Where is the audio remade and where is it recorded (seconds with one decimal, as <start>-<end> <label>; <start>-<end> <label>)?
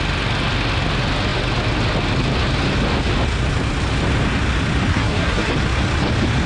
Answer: 0.0-4.9 recorded; 4.9-5.5 remade; 5.5-6.5 recorded